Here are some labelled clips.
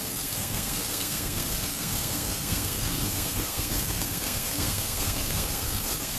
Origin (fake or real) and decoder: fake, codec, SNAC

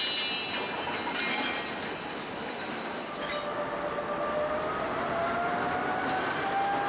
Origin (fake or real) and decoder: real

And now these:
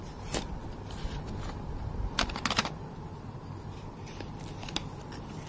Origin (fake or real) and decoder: real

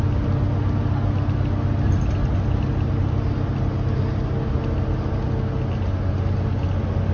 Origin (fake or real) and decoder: real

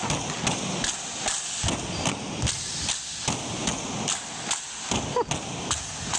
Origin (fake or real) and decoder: real